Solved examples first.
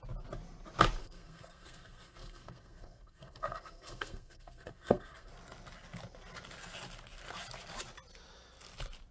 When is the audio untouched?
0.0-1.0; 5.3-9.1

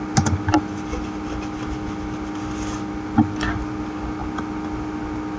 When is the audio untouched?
0.0-5.4

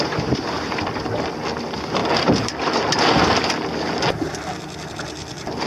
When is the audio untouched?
0.0-5.7

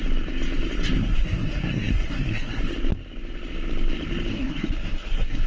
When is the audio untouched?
0.0-1.0; 2.6-4.3

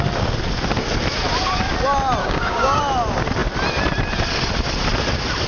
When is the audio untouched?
0.0-2.2; 2.8-5.5